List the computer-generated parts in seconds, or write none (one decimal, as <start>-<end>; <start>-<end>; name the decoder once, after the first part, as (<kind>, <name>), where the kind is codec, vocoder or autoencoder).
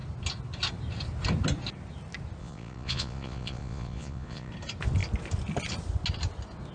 2.4-4.5 (vocoder, Vocos)